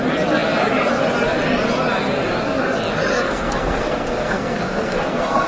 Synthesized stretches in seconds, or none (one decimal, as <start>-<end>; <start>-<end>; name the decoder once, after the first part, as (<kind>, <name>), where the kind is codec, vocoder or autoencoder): 3.1-5.5 (codec, SNAC)